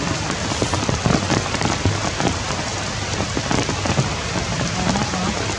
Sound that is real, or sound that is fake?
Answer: real